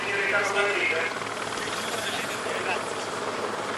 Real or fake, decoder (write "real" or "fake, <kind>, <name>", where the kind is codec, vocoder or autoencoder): real